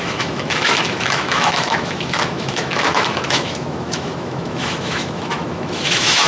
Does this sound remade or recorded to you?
remade